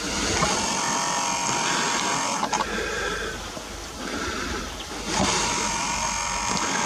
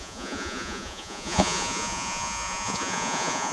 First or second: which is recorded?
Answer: first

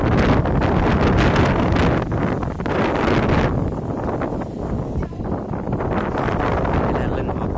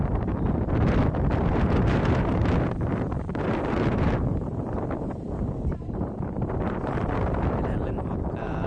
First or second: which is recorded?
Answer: first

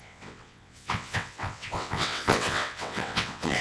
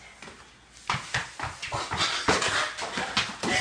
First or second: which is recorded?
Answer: second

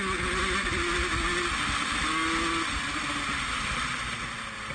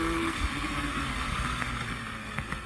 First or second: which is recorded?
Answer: first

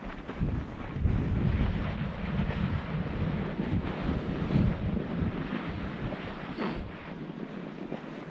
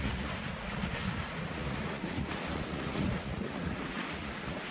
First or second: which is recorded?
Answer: first